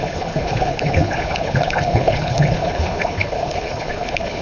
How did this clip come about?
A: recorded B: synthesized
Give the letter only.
B